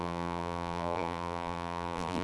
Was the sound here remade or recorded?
remade